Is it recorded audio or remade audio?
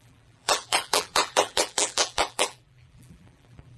remade